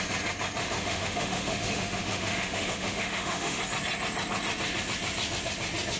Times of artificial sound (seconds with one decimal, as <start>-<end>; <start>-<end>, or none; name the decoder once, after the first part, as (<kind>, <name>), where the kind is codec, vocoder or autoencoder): 0.6-3.6 (autoencoder, DAC-VAE)